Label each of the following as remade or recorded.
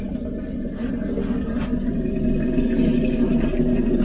recorded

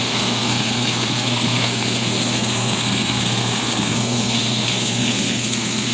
remade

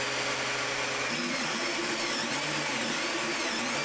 recorded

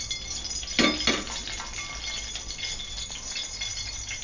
recorded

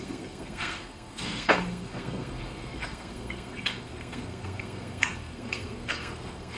remade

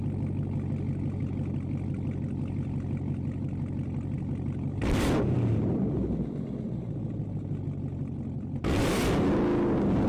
recorded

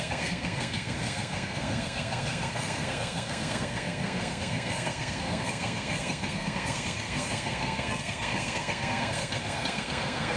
remade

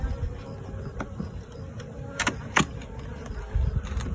recorded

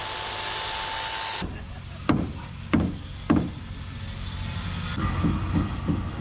recorded